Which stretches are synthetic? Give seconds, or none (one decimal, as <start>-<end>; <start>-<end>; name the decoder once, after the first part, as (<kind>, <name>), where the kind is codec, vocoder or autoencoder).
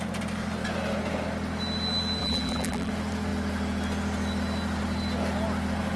2.2-2.9 (vocoder, BigVGAN v2)